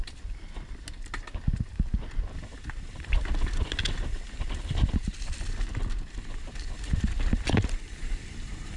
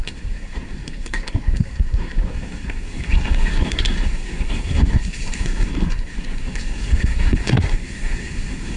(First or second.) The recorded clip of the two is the first